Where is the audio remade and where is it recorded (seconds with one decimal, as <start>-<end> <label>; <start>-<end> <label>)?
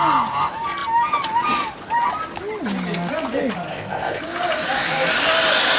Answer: 0.0-3.7 recorded; 3.7-4.2 remade; 4.2-5.8 recorded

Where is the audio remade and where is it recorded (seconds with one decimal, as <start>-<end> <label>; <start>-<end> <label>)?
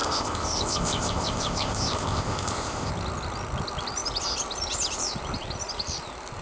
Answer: 0.0-2.9 remade; 2.9-6.4 recorded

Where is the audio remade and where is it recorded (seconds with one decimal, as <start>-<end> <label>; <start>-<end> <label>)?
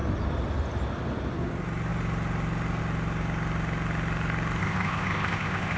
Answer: 0.0-4.6 recorded; 4.6-5.8 remade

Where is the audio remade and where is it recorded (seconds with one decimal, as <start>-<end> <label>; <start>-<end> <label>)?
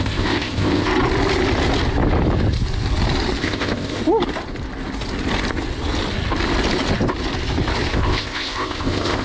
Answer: 0.0-0.9 remade; 0.9-3.4 recorded; 3.4-4.0 remade; 4.0-7.9 recorded; 7.9-9.2 remade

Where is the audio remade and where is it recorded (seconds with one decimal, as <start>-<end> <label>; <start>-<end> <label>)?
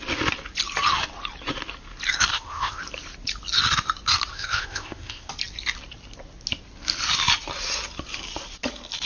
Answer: 0.0-2.3 recorded; 2.3-2.8 remade; 2.8-4.3 recorded; 4.3-5.3 remade; 5.3-9.1 recorded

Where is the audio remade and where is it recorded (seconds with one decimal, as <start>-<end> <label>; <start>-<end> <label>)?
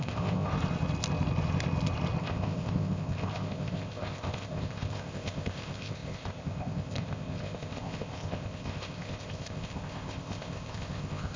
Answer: 0.0-0.5 remade; 0.5-2.2 recorded; 2.2-11.4 remade